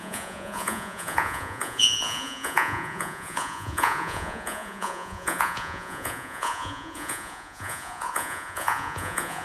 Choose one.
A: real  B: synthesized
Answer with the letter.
B